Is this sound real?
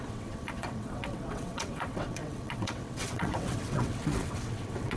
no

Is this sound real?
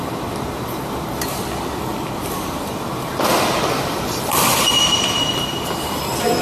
no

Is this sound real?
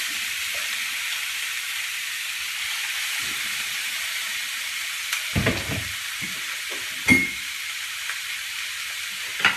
no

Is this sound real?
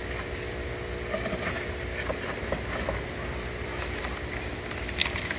yes